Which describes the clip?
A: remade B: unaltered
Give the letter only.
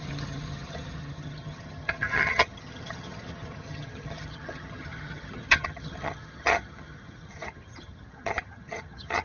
A